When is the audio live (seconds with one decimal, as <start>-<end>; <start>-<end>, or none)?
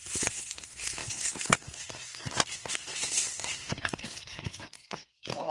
none